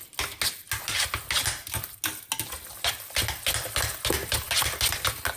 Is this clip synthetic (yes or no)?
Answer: no